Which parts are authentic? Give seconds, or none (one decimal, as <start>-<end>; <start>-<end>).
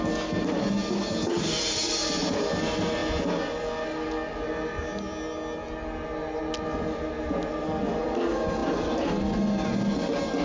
0.0-10.4